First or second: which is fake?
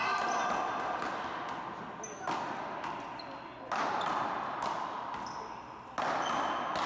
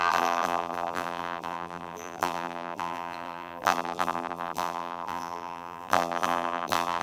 second